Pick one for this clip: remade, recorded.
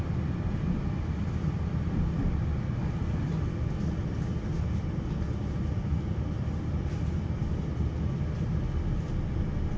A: recorded